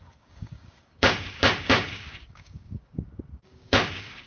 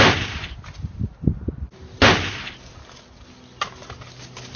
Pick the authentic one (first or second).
second